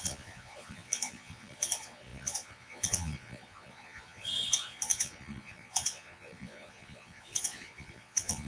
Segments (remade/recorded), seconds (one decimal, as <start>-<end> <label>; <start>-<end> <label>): 0.0-8.5 remade